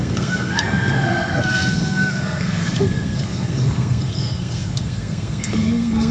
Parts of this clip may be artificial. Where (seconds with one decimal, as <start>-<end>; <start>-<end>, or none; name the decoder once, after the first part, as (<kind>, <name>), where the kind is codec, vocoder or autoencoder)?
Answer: 0.0-6.1 (codec, SNAC)

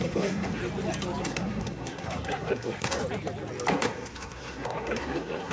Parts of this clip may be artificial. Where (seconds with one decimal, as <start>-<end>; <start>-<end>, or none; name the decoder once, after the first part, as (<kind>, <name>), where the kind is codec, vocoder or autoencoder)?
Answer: 0.0-0.6 (codec, SNAC); 1.2-3.0; 3.7-5.5

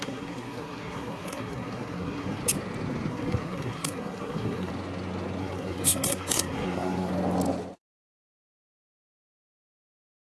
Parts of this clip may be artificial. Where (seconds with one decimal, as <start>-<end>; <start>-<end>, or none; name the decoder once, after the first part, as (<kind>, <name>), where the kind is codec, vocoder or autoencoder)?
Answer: 0.0-2.4 (codec, SNAC); 3.1-4.7; 5.4-7.1; 7.8-10.3

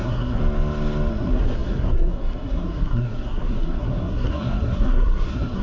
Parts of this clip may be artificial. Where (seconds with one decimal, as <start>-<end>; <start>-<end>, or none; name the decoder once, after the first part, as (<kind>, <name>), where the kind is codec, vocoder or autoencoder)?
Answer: 0.0-0.4 (codec, SNAC); 1.1-5.6

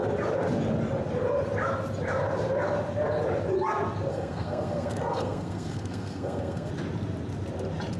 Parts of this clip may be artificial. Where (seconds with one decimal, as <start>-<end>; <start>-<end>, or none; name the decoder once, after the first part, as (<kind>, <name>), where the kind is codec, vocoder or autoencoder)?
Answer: 4.1-6.7 (codec, SNAC)

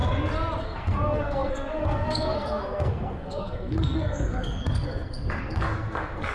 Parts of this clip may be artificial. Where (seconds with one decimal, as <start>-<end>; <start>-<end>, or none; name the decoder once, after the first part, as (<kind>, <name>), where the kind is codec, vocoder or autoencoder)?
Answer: 0.6-6.3 (codec, SNAC)